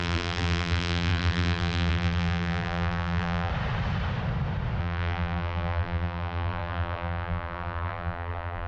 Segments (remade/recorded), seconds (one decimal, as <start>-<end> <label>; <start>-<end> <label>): 0.0-3.5 remade; 3.5-4.8 recorded; 4.8-8.7 remade